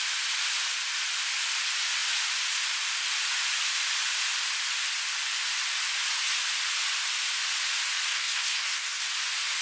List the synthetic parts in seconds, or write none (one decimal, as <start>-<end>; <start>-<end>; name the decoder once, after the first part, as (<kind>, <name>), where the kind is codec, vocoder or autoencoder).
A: 8.1-9.0 (codec, SNAC)